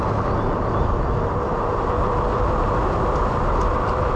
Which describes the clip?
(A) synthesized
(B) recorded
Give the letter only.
B